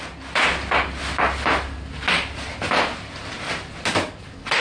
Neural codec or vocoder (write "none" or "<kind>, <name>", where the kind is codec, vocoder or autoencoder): none